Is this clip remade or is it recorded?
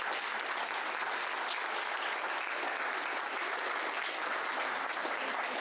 recorded